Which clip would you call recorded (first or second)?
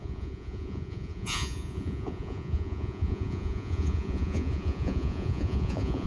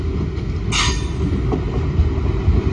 second